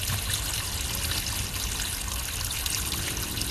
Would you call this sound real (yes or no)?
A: yes